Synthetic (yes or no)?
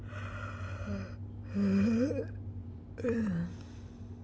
no